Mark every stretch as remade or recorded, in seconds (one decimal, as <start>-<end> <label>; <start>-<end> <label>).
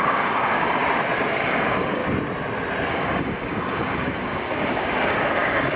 0.0-0.8 remade; 0.8-1.4 recorded; 1.4-2.0 remade; 2.0-2.9 recorded; 2.9-5.8 remade